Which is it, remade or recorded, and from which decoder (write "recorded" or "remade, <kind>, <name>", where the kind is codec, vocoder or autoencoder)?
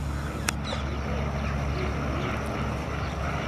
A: recorded